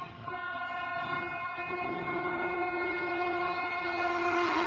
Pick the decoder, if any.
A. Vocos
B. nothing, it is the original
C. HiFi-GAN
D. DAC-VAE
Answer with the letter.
C